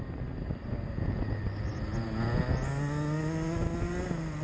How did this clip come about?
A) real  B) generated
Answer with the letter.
A